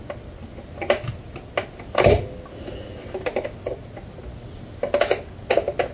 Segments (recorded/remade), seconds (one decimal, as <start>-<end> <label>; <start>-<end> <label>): 0.0-5.9 recorded